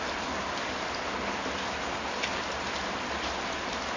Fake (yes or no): no